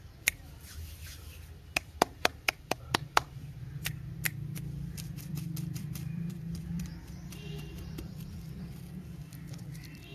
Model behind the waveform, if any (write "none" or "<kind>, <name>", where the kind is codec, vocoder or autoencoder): vocoder, BigVGAN v2